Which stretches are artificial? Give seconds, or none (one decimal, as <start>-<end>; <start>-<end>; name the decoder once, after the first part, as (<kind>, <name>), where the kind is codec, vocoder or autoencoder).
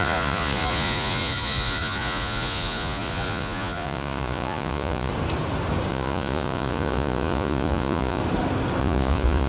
0.0-5.1 (vocoder, Vocos); 5.9-8.2; 8.8-9.5